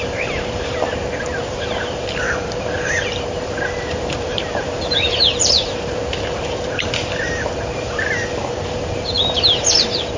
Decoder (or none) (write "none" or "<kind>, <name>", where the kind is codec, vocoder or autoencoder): vocoder, BigVGAN v2